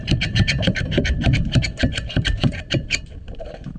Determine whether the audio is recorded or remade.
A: remade